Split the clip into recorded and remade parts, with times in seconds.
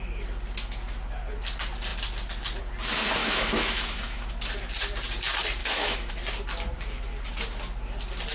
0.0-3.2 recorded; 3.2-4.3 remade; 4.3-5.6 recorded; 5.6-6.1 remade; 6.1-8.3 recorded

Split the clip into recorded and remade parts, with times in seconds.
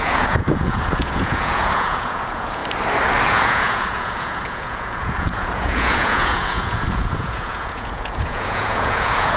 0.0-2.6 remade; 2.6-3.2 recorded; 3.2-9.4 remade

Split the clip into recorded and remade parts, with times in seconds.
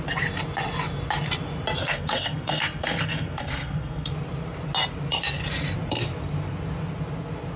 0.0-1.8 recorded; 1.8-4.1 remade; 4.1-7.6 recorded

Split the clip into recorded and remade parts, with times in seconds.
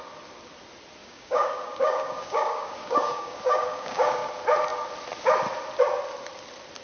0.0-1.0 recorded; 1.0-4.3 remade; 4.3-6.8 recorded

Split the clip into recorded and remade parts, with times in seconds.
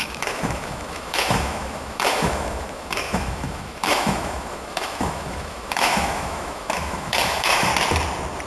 0.0-7.7 remade; 7.7-8.5 recorded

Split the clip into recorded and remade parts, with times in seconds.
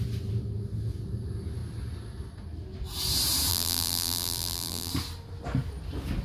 0.0-3.5 recorded; 3.5-4.9 remade; 4.9-6.2 recorded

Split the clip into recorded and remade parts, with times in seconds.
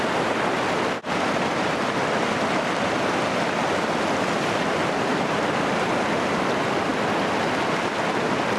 0.0-8.6 recorded